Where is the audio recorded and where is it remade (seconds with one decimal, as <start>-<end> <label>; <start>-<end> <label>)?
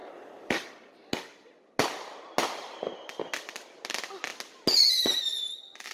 0.0-5.9 recorded